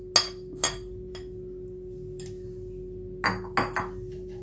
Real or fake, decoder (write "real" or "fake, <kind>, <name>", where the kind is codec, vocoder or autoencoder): real